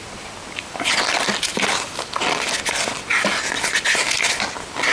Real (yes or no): yes